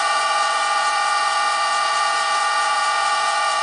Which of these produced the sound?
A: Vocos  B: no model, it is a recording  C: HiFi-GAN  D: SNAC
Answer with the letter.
A